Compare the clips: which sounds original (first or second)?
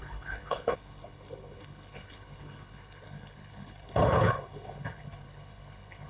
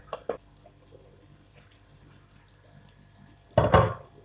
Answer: second